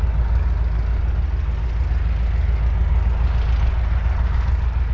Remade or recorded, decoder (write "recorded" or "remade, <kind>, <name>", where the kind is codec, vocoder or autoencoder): recorded